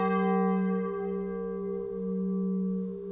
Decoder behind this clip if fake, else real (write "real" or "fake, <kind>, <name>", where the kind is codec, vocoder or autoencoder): real